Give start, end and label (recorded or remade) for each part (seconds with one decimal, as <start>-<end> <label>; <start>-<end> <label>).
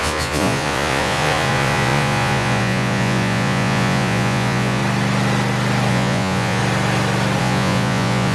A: 0.0-4.8 remade; 4.8-5.9 recorded; 5.9-6.6 remade; 6.6-7.4 recorded; 7.4-8.3 remade